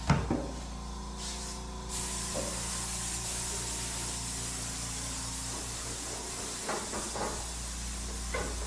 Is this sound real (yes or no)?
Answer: yes